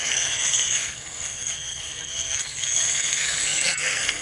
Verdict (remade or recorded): remade